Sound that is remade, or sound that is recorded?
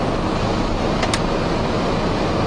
recorded